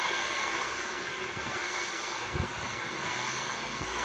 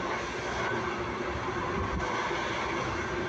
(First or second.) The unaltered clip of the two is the second